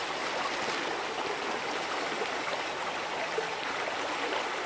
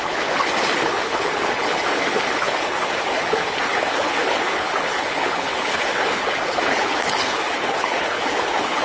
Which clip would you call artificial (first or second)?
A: second